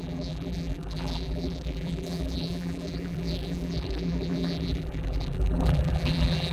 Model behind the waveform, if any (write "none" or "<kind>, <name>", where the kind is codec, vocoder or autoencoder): vocoder, BigVGAN v2